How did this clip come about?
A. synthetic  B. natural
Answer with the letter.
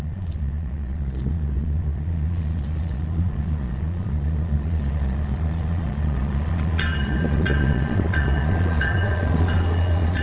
A